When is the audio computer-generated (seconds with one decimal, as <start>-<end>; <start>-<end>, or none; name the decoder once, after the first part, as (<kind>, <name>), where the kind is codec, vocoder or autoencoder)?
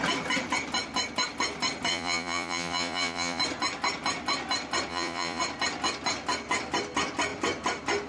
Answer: 1.9-3.4 (vocoder, Vocos); 4.9-5.4